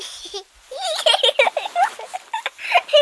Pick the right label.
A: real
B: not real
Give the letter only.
A